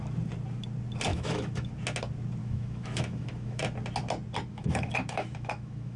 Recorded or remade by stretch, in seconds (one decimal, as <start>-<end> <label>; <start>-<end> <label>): 0.0-1.1 recorded; 1.1-1.7 remade; 1.7-2.4 recorded; 2.4-3.6 remade; 3.6-4.5 recorded; 4.5-6.0 remade